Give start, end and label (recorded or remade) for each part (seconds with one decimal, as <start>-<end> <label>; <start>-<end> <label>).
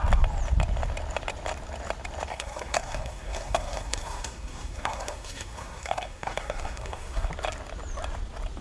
0.0-2.3 recorded; 2.3-7.3 remade; 7.3-8.6 recorded